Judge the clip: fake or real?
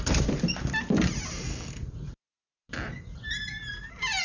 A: real